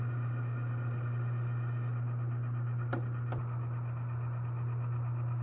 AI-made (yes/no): no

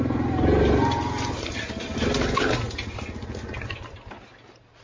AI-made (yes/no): no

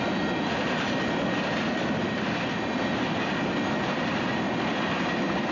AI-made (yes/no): no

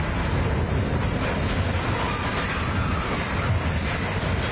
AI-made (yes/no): no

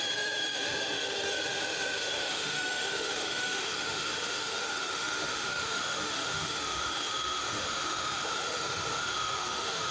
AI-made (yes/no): yes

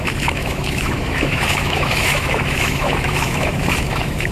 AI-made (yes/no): yes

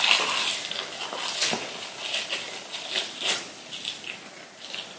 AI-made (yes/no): no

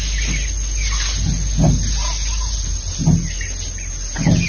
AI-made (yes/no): no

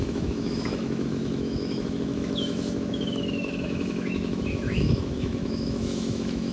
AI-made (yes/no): yes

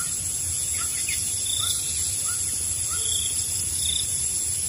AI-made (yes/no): no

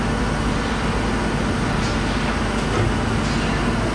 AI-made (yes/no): no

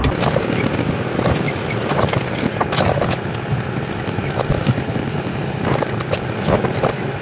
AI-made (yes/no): no